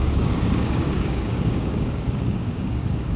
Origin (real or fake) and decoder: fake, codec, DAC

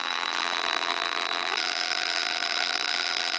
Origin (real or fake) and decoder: fake, vocoder, BigVGAN v2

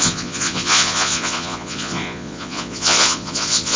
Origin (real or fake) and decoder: fake, vocoder, Vocos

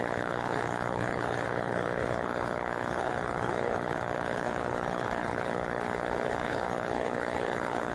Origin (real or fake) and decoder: fake, codec, HILCodec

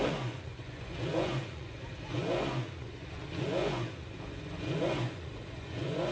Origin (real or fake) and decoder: fake, vocoder, Vocos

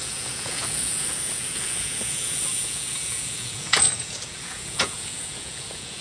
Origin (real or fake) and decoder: fake, vocoder, Vocos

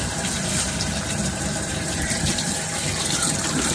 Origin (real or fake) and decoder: fake, vocoder, BigVGAN v2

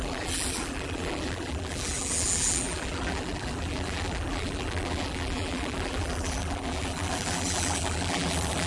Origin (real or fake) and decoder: fake, vocoder, BigVGAN v2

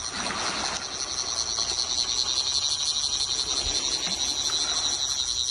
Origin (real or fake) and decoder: real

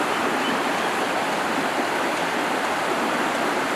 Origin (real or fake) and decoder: real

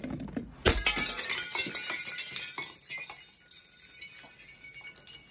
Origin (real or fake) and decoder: real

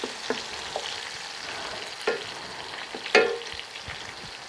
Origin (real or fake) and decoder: real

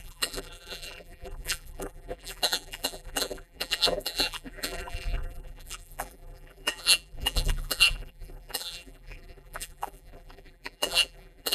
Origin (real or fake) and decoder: fake, vocoder, BigVGAN v2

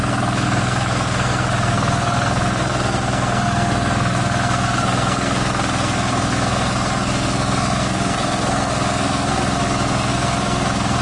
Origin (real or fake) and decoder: fake, codec, SNAC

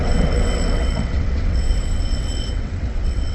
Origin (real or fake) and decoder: fake, vocoder, WaveNeXt